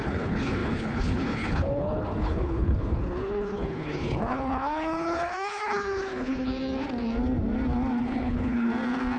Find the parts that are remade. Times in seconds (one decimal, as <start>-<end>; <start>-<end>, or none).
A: 0.0-6.5; 8.0-8.7